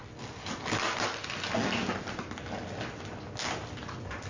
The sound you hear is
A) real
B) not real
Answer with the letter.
A